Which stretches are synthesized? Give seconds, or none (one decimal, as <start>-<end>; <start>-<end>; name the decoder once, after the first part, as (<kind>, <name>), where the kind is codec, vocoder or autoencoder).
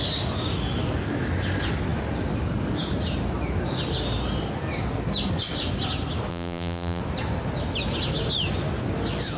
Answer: 6.3-7.0 (vocoder, BigVGAN v2)